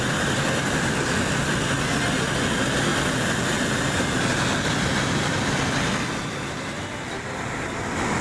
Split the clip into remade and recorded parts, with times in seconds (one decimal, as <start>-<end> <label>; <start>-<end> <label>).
0.0-8.2 recorded